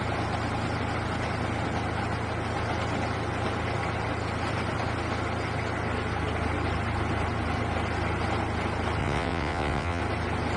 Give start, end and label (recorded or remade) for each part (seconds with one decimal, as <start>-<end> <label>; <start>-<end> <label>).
0.0-9.0 recorded; 9.0-10.0 remade; 10.0-10.6 recorded